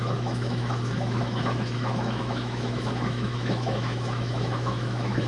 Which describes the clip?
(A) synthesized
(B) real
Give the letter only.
A